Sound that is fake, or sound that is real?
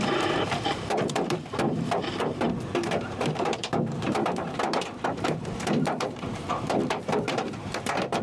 fake